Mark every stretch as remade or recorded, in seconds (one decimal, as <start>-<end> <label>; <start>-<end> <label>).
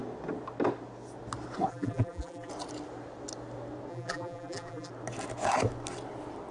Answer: 0.0-1.7 recorded; 1.7-2.5 remade; 2.5-3.9 recorded; 3.9-4.9 remade; 4.9-6.5 recorded